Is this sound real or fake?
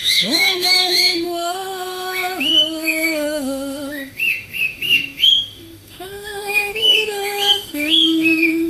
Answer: fake